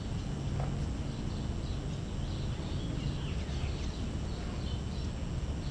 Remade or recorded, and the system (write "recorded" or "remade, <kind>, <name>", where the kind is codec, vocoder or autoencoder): recorded